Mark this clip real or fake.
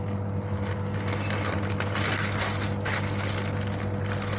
real